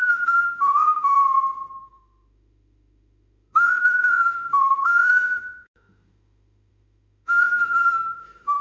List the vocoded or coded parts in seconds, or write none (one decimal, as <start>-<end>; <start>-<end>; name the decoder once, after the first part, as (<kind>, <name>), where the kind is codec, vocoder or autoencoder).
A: 0.0-1.2 (autoencoder, DAC-VAE); 1.8-8.6